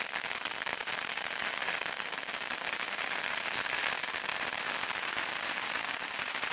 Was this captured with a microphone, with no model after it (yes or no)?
no